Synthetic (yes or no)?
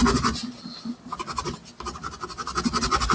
no